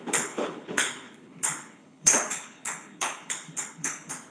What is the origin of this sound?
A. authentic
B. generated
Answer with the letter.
B